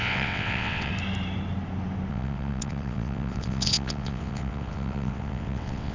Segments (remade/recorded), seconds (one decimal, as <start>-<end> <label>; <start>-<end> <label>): 0.0-0.9 remade; 0.9-2.1 recorded; 2.1-5.9 remade